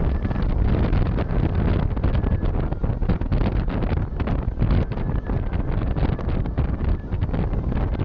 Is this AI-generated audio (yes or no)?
no